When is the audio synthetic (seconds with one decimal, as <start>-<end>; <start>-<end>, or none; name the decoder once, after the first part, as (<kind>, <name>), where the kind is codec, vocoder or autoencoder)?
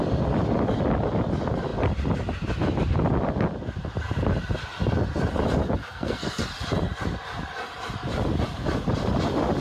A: 5.8-6.4 (codec, SNAC)